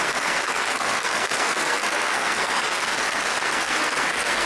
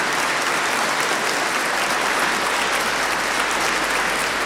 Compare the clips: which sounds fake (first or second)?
first